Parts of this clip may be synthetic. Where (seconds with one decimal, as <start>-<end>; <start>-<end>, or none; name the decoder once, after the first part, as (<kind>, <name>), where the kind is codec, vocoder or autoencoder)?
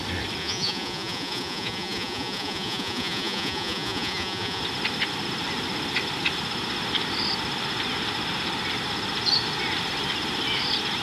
0.4-4.6 (vocoder, Vocos)